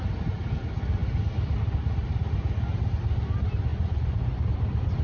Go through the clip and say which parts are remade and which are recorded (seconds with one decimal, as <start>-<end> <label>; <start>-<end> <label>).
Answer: 0.0-3.7 recorded; 3.7-4.5 remade; 4.5-5.0 recorded